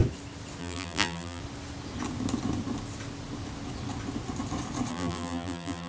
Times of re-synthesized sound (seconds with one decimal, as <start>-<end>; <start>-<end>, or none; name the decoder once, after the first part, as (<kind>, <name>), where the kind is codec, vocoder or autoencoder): 0.6-1.4 (vocoder, BigVGAN v2); 4.9-5.9